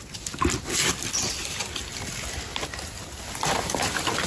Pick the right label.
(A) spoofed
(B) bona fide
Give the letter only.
B